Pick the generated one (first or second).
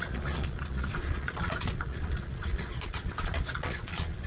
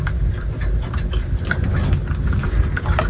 first